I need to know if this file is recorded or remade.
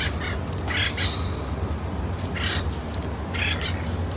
recorded